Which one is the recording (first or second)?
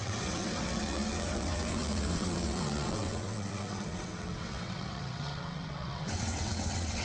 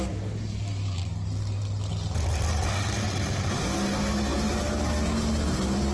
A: second